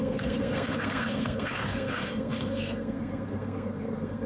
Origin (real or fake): fake